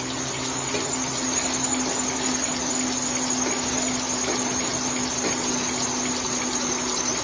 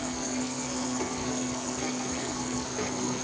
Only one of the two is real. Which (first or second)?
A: first